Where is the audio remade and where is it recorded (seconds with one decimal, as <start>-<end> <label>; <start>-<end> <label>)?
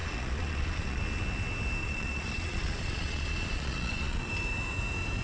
0.0-1.0 remade; 1.0-1.8 recorded; 1.8-4.3 remade; 4.3-5.2 recorded